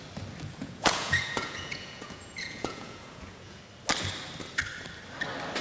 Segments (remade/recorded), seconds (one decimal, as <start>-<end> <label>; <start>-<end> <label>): 0.0-0.6 recorded; 0.6-3.6 remade; 3.6-5.6 recorded

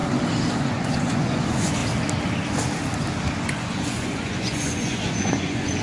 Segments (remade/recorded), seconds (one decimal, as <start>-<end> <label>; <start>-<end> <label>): 0.0-0.6 recorded; 0.6-1.8 remade; 1.8-3.3 recorded; 3.3-5.8 remade

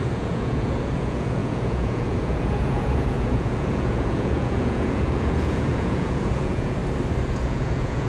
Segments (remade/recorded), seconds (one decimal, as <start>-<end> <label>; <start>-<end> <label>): 0.0-6.8 remade; 6.8-7.3 recorded; 7.3-8.1 remade

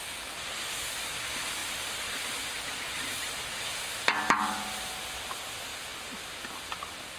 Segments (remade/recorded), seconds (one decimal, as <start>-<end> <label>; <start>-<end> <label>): 0.0-7.2 recorded

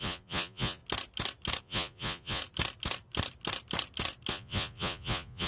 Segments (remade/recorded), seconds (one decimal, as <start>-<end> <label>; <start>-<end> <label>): 0.0-0.8 remade; 0.8-1.6 recorded; 1.6-2.4 remade; 2.4-4.3 recorded; 4.3-5.5 remade